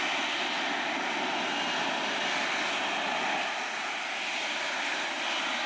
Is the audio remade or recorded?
recorded